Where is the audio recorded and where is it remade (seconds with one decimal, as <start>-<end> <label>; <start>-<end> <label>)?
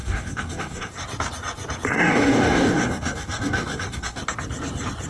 0.0-0.9 remade; 0.9-1.9 recorded; 1.9-4.2 remade; 4.2-5.1 recorded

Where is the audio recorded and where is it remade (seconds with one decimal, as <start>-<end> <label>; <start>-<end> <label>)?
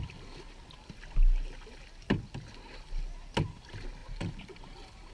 0.0-4.0 recorded; 4.0-5.1 remade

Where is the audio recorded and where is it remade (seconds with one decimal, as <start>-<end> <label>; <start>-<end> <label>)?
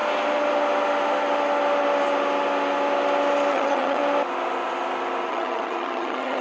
0.0-3.5 recorded; 3.5-4.0 remade; 4.0-5.3 recorded; 5.3-6.4 remade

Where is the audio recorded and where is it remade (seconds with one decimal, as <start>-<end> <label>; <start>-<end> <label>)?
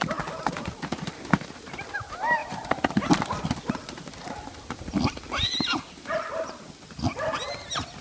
0.0-0.9 recorded; 0.9-1.6 remade; 1.6-2.4 recorded; 2.4-7.0 remade; 7.0-8.0 recorded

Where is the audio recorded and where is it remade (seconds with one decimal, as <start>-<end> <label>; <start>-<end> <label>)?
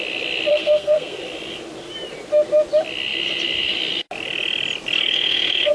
0.0-0.5 recorded; 0.5-1.2 remade; 1.2-5.1 recorded; 5.1-5.7 remade